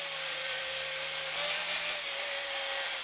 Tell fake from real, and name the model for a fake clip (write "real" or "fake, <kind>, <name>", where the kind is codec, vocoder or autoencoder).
fake, vocoder, BigVGAN v2